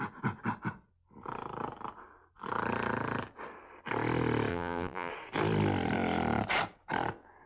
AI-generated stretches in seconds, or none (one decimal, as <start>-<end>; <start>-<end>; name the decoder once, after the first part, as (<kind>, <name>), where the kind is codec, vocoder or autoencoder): 4.5-5.1 (vocoder, BigVGAN v2)